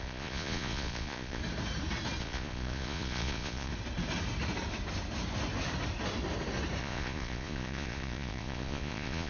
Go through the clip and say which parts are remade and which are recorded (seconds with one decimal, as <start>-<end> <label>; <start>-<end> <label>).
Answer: 0.0-1.4 remade; 1.4-2.2 recorded; 2.2-3.7 remade; 3.7-6.8 recorded; 6.8-9.3 remade